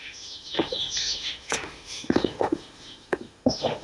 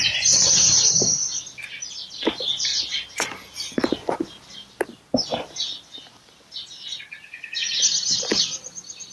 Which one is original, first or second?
second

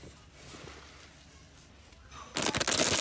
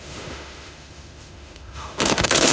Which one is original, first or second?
first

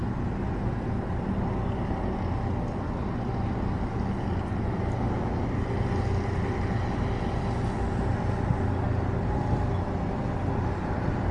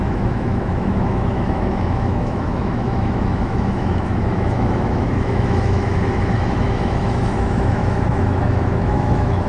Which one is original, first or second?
first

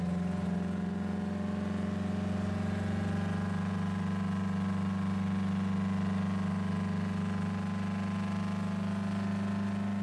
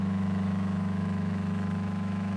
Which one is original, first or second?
first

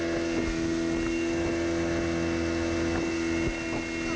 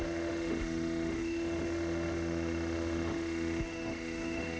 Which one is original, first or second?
first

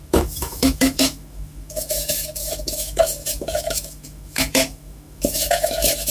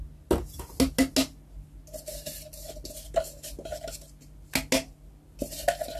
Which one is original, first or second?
second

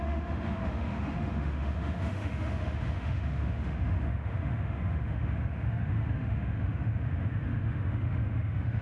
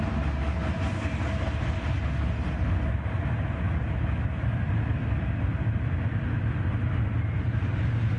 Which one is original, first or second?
second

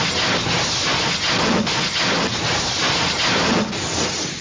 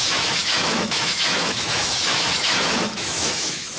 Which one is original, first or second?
first